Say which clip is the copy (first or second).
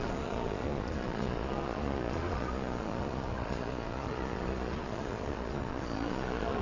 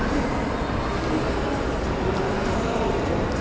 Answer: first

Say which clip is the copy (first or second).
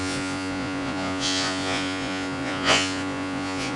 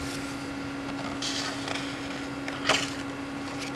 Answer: first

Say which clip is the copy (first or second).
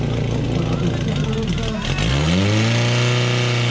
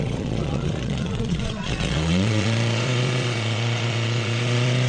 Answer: second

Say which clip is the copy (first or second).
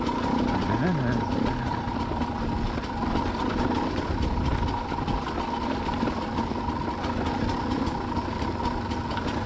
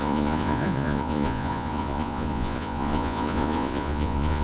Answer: second